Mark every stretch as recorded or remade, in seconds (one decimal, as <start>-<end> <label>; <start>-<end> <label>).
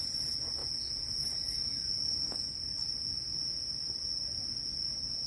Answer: 0.0-5.3 recorded